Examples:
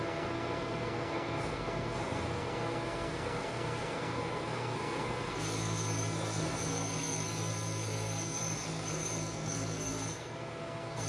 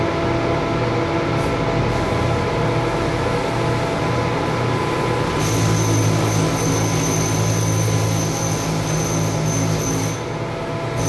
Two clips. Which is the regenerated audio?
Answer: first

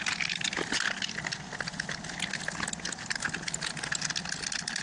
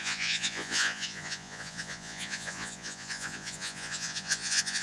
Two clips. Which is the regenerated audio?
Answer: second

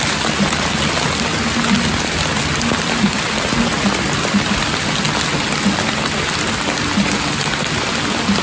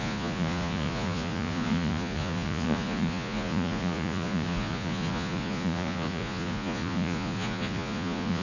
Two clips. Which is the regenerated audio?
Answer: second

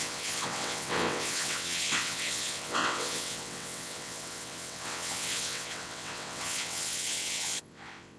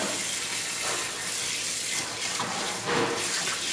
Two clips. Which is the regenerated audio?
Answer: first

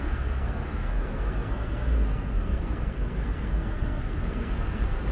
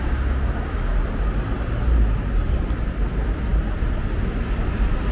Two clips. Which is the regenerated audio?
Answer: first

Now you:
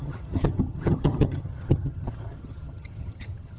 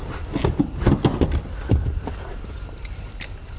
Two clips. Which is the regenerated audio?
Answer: first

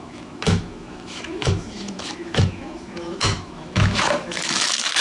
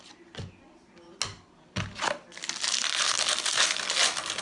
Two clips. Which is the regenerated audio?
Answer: first